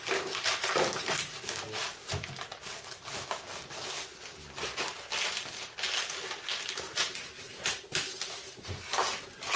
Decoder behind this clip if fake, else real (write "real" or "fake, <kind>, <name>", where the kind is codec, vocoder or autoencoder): real